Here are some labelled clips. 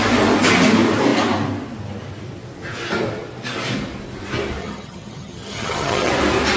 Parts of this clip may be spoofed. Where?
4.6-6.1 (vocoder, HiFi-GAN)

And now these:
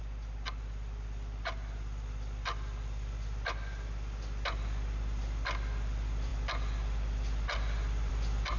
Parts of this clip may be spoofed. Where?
none